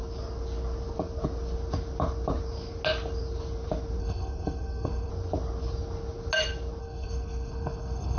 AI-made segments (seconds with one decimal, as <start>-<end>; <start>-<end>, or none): 4.0-5.1; 6.8-8.2